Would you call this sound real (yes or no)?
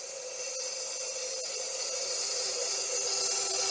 yes